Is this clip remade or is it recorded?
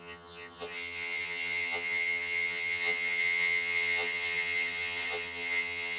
remade